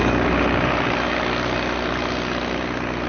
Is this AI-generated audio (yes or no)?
no